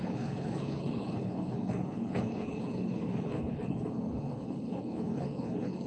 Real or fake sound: fake